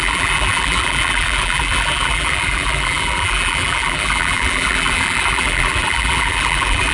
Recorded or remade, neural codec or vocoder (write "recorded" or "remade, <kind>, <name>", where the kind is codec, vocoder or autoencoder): remade, vocoder, BigVGAN v2